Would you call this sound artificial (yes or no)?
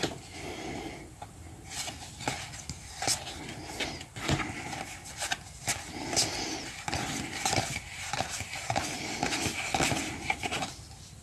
no